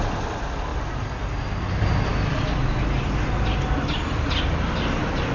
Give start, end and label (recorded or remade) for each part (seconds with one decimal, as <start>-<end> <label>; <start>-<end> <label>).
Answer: 0.0-5.3 recorded